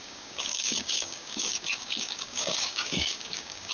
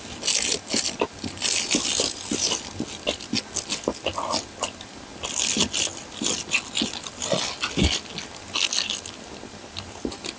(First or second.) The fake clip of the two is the first